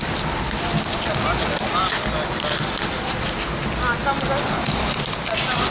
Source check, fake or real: real